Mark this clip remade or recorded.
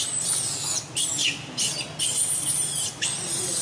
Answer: recorded